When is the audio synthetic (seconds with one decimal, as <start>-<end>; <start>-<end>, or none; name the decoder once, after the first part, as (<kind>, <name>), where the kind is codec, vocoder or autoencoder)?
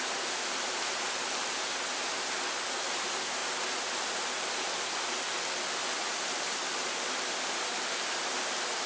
none